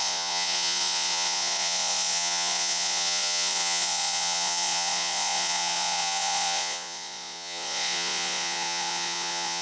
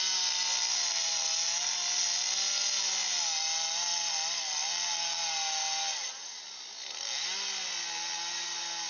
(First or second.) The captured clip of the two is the second